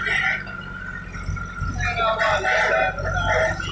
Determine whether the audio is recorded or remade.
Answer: recorded